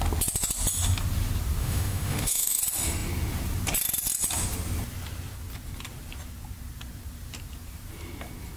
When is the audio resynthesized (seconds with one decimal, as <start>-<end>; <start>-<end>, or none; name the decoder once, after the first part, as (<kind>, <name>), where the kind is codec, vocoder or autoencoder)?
1.6-2.6 (autoencoder, DAC-VAE)